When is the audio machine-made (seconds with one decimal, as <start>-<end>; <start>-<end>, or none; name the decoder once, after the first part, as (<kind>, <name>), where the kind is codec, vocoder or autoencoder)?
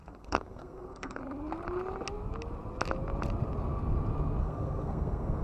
0.0-1.2 (codec, SNAC); 4.4-5.4